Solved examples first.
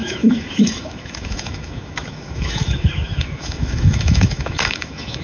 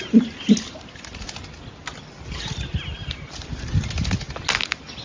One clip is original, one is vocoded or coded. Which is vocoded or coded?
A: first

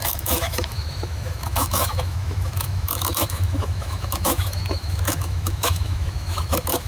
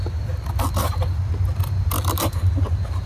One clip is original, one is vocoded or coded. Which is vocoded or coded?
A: first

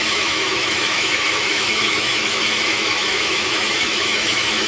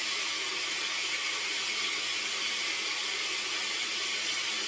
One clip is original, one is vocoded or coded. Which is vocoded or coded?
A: first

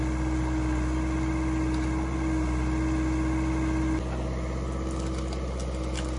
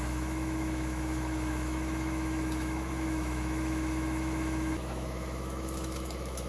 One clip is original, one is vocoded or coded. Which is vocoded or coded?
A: second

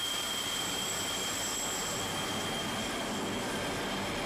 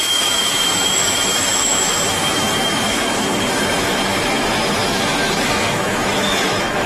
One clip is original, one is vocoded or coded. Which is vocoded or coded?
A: second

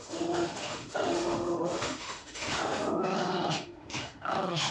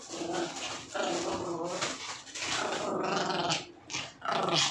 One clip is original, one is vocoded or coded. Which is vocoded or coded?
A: first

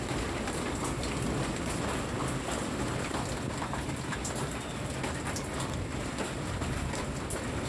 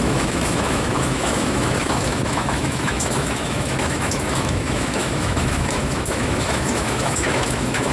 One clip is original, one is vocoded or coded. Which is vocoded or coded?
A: second